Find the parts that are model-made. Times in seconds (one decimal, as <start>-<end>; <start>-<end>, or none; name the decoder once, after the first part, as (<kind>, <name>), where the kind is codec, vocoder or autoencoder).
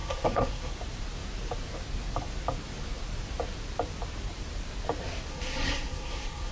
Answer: 0.0-0.7 (codec, SNAC); 5.3-6.5